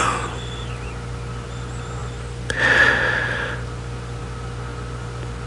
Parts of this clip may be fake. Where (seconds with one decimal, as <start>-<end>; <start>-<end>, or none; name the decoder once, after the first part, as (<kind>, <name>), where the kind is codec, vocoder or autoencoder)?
none